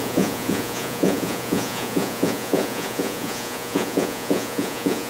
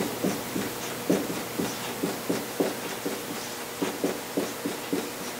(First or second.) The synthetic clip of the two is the first